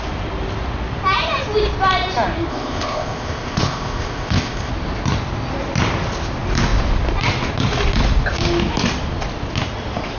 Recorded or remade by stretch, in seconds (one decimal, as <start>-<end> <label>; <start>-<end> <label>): 0.0-2.5 recorded; 2.5-4.7 remade; 4.7-10.2 recorded